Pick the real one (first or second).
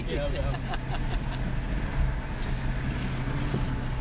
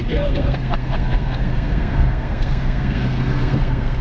first